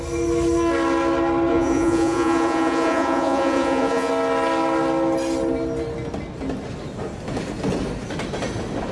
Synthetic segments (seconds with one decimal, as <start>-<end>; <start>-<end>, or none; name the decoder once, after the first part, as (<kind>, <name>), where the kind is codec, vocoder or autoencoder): 1.5-4.1 (vocoder, Vocos)